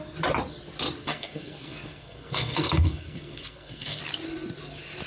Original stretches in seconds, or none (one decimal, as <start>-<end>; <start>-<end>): 0.0-1.0; 4.0-5.1